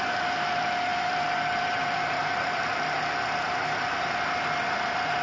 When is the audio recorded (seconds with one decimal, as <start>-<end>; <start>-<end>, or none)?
2.2-4.6